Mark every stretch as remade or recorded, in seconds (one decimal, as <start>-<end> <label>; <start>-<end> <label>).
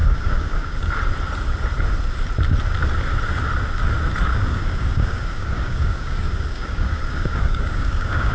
0.0-0.9 remade; 0.9-4.3 recorded; 4.3-8.3 remade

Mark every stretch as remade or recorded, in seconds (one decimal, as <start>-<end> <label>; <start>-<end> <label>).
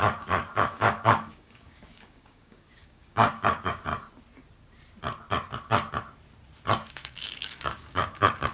0.0-3.9 remade; 3.9-6.9 recorded; 6.9-8.5 remade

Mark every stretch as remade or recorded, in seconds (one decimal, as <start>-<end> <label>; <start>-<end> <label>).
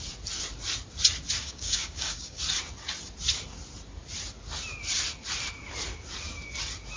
0.0-1.4 recorded; 1.4-2.4 remade; 2.4-7.0 recorded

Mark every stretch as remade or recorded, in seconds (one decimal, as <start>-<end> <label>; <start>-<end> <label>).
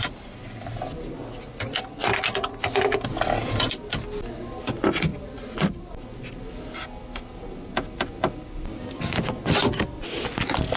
0.0-10.8 recorded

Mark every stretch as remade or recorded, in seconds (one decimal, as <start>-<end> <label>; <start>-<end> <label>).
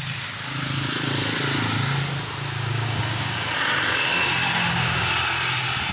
0.0-2.7 recorded; 2.7-3.5 remade; 3.5-4.4 recorded; 4.4-5.1 remade; 5.1-5.9 recorded